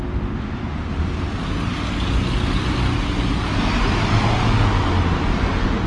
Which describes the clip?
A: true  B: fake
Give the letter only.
A